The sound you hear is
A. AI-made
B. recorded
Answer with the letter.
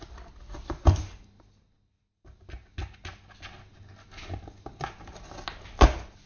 B